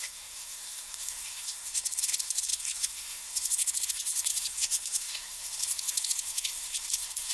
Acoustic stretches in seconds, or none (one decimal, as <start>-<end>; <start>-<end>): none